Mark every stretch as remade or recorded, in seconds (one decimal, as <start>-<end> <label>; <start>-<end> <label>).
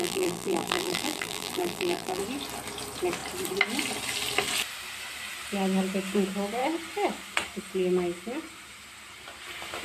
0.0-2.2 remade; 2.2-9.8 recorded